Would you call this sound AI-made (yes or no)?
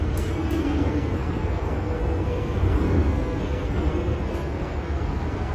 yes